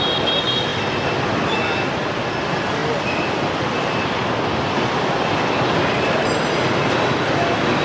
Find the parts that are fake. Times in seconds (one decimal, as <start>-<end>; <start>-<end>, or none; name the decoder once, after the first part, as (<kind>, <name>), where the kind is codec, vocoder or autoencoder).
0.7-2.2 (vocoder, BigVGAN v2); 2.8-7.2